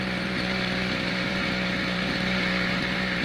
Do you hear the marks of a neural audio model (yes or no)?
yes